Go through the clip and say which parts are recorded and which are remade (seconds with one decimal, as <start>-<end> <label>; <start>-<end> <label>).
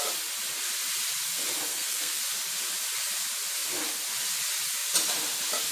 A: 0.0-1.7 recorded; 1.7-2.2 remade; 2.2-5.7 recorded